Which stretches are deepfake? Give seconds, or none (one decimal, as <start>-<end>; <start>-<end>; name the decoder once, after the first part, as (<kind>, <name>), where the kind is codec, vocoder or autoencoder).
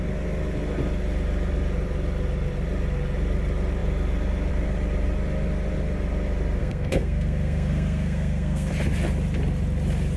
6.6-8.7 (codec, SNAC)